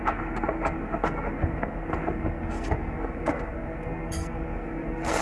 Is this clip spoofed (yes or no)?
yes